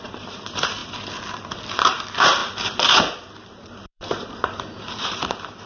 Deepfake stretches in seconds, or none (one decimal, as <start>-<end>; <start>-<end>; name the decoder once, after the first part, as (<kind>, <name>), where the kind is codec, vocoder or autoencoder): 0.0-5.7 (vocoder, BigVGAN v2)